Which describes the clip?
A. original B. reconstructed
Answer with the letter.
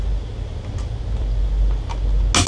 A